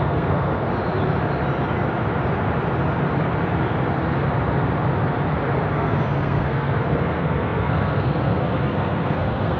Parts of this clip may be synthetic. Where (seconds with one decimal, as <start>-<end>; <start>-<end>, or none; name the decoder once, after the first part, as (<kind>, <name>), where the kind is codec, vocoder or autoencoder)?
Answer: 0.0-0.7 (codec, SNAC); 5.7-9.6